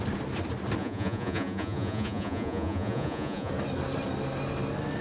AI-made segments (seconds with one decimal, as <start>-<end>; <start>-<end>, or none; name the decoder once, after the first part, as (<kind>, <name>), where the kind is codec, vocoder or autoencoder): 0.8-3.5 (vocoder, Vocos)